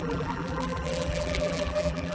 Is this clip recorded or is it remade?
remade